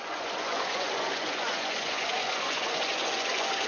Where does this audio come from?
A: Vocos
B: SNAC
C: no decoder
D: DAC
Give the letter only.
A